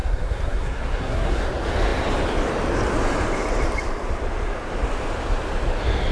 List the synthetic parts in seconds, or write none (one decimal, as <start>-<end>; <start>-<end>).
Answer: 0.0-1.4